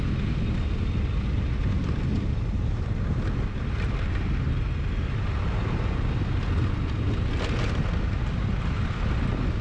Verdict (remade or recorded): recorded